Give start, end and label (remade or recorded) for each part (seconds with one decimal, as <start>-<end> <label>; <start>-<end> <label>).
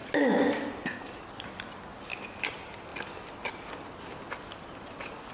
0.0-5.3 recorded